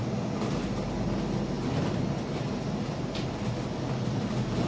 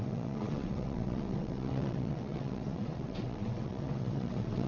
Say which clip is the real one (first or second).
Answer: first